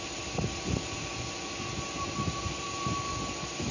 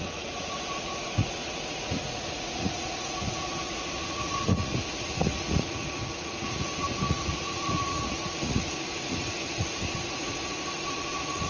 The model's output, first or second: second